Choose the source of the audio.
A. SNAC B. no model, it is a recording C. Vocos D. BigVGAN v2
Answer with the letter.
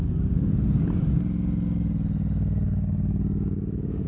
B